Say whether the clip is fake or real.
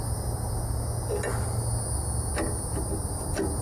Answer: real